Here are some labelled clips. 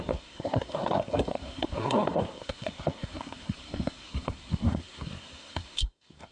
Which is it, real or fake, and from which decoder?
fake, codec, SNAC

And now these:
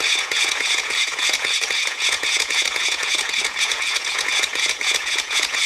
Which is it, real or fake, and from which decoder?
fake, vocoder, Vocos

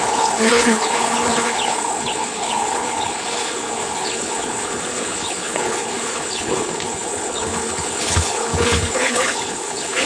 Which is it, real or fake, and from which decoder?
fake, codec, HILCodec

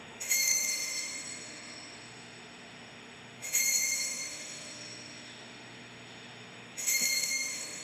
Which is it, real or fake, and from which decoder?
fake, autoencoder, DAC-VAE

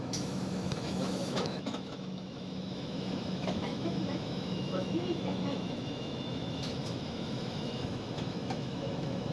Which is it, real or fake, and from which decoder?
fake, autoencoder, DAC-VAE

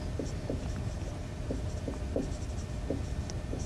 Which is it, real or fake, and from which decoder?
real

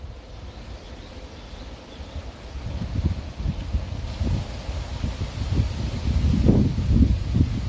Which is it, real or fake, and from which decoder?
real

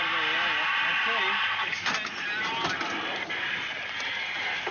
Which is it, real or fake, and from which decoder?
real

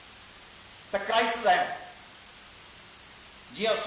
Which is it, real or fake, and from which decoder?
real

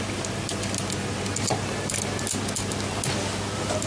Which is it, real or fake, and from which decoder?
real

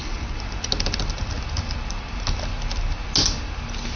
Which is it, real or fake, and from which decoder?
real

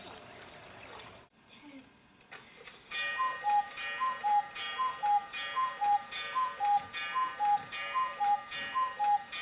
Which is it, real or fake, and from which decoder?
fake, vocoder, BigVGAN v2